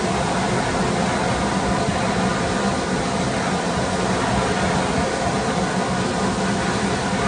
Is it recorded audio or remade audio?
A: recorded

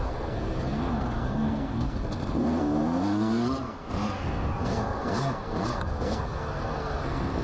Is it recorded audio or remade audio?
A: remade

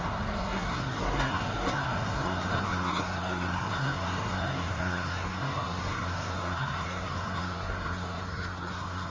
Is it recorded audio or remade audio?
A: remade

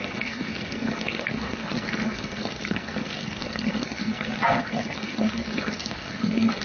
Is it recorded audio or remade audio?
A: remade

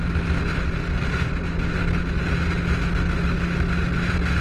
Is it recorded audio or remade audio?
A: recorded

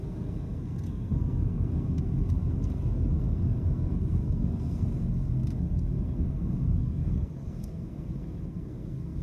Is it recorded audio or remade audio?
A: remade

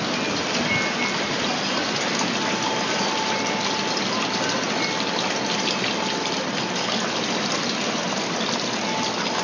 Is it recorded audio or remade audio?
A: recorded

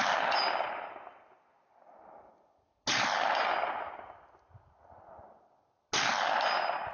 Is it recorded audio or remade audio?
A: recorded